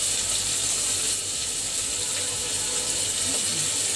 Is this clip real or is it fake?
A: real